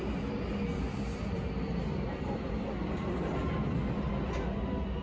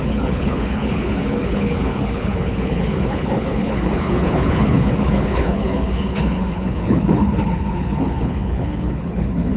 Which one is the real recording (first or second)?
first